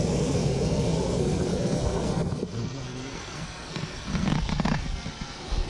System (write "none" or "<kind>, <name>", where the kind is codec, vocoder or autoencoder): codec, SNAC